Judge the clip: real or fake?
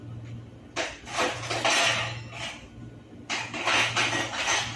real